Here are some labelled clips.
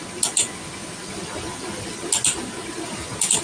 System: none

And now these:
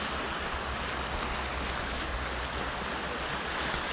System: none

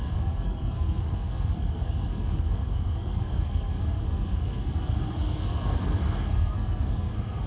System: codec, SNAC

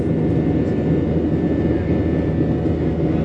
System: none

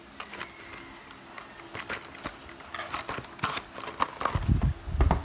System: none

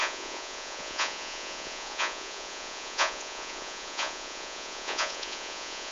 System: vocoder, Vocos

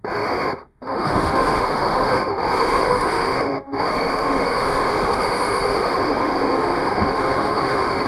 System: autoencoder, DAC-VAE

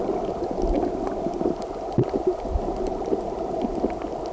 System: none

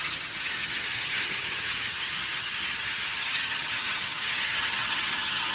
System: vocoder, HiFi-GAN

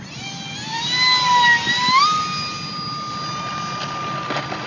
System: none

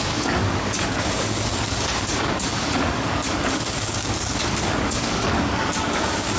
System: codec, DAC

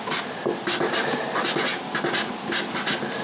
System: none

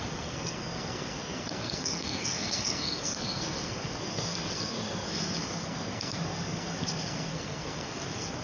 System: codec, SNAC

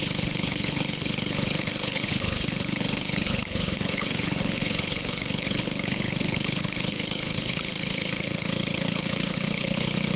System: codec, HILCodec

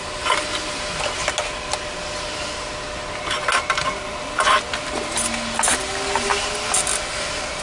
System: none